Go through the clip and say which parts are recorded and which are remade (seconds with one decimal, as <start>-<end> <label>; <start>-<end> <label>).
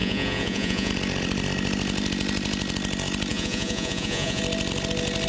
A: 0.0-0.9 remade; 0.9-3.3 recorded; 3.3-4.4 remade; 4.4-5.3 recorded